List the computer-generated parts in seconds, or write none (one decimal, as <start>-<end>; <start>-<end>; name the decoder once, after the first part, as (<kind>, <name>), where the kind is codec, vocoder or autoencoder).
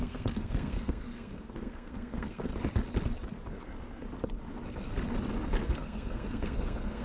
0.0-2.5 (codec, SNAC); 5.7-7.0